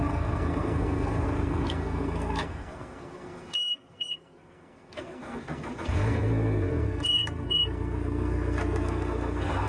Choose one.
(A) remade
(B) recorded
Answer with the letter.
A